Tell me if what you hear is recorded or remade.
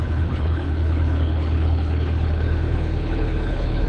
remade